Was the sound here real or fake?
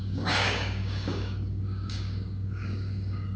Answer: fake